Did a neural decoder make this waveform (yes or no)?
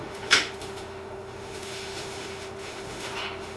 yes